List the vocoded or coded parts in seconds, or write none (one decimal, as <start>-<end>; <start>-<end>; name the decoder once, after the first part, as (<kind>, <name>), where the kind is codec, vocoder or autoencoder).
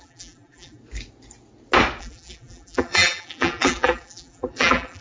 0.0-0.8 (vocoder, BigVGAN v2); 2.0-5.0